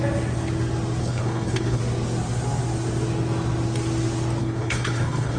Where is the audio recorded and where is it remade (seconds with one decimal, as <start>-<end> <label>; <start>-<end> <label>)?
0.0-1.0 recorded; 1.0-1.8 remade; 1.8-4.4 recorded; 4.4-5.4 remade